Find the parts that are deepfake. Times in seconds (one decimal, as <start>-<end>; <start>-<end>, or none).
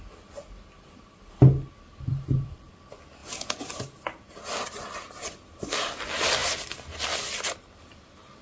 2.1-2.7